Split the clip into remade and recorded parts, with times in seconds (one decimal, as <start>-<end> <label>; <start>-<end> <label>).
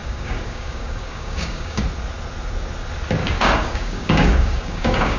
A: 0.0-1.8 remade; 1.8-3.2 recorded; 3.2-5.2 remade